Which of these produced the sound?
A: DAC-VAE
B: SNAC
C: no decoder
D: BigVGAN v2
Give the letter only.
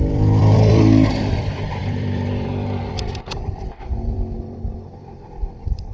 D